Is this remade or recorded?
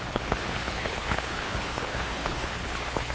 remade